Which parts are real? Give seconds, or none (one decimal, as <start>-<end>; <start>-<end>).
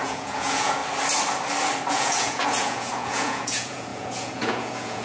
0.8-1.9